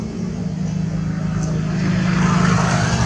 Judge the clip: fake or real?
real